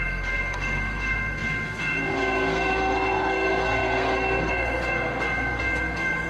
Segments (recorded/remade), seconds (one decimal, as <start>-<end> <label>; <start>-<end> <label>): 0.0-6.3 remade